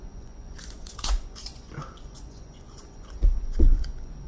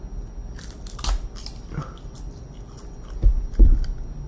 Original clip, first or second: second